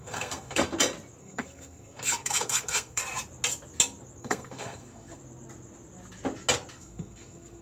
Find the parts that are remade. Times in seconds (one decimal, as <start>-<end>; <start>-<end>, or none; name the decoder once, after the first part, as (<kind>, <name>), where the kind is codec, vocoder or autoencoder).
0.0-0.6 (codec, SNAC); 1.2-3.0; 4.2-5.2; 6.7-7.6